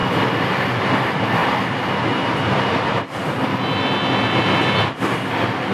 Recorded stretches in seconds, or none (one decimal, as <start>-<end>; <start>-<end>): 0.0-5.7

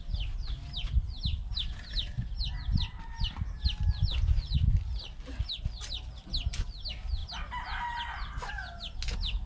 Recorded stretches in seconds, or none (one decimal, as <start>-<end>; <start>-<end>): 0.0-9.5

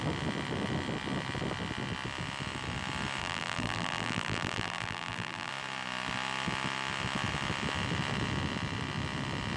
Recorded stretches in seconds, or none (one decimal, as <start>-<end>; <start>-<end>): 0.0-3.2; 5.5-9.6

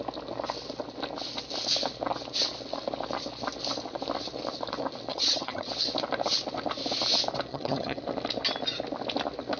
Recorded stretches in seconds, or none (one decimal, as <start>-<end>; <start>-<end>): 0.0-5.1; 5.7-7.5; 8.0-9.6

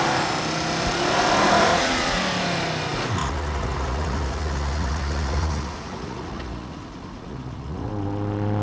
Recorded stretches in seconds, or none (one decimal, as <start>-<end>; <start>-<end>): 0.0-1.7; 2.2-3.2; 7.9-8.6

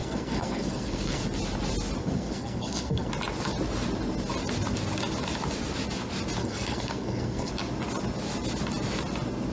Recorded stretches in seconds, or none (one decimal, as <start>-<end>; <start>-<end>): 1.2-2.0; 3.1-6.4; 7.5-9.5

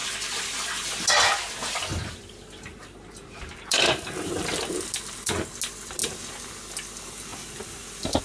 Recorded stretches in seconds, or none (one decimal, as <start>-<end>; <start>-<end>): 0.0-1.9; 4.8-8.2

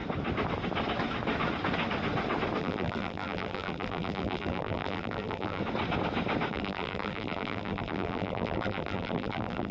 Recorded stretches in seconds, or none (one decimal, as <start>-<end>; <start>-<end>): 0.0-2.6; 5.6-6.5